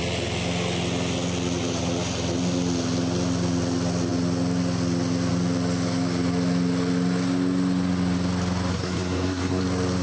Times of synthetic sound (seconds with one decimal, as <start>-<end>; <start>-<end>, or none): 8.7-9.6